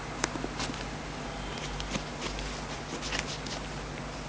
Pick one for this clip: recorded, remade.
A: recorded